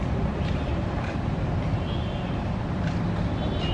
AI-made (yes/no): no